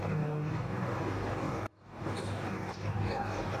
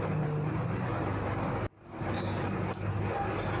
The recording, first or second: second